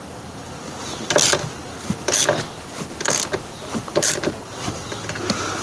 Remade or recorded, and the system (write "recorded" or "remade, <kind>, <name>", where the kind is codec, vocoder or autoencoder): recorded